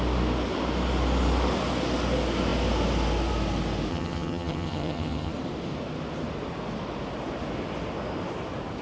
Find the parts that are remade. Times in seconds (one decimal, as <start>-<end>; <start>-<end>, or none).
3.9-5.3